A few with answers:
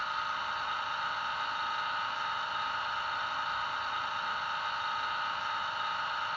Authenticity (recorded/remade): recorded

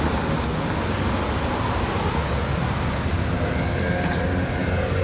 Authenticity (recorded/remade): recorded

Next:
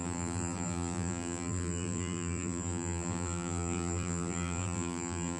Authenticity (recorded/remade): remade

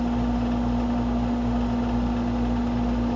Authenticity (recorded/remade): recorded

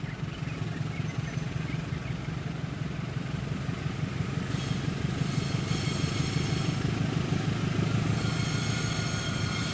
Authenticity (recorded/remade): recorded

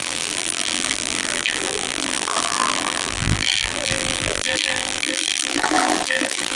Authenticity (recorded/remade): remade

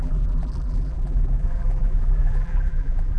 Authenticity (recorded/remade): remade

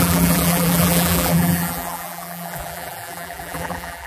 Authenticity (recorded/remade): remade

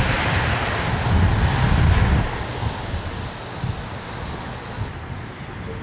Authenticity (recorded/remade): recorded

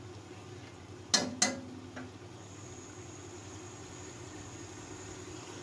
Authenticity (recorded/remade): recorded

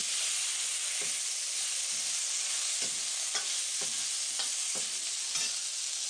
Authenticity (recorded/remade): recorded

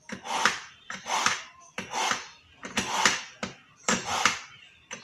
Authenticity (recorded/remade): remade